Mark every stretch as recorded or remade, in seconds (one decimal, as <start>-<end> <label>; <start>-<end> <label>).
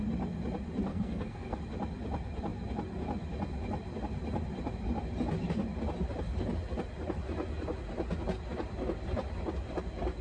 0.0-0.9 recorded; 0.9-1.6 remade; 1.6-10.2 recorded